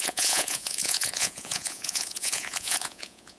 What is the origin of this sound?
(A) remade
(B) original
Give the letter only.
A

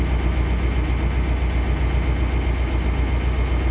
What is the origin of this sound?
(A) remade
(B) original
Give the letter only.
B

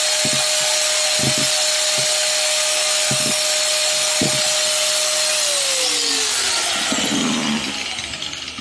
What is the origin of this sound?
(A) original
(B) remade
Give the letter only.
A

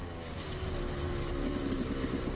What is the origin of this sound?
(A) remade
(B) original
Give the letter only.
B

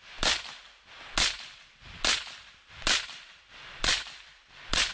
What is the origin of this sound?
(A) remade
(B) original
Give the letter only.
B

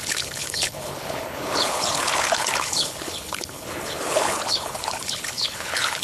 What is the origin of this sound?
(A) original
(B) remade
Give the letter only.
B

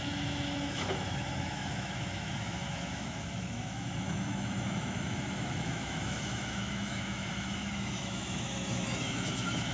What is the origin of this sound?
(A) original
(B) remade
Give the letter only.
B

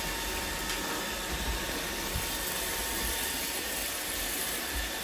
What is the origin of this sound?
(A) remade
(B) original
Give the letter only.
B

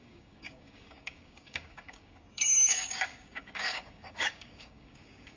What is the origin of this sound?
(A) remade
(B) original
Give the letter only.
A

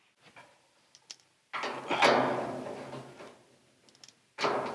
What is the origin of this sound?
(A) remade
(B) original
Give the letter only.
B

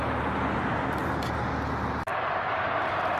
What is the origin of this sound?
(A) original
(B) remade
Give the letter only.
A